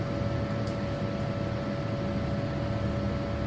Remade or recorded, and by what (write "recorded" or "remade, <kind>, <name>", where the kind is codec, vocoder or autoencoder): recorded